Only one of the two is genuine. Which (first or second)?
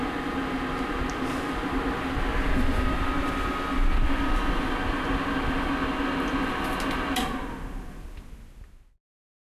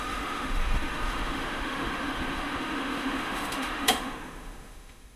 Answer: first